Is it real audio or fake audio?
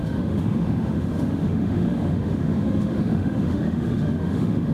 fake